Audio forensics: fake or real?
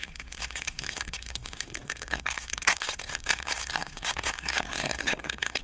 fake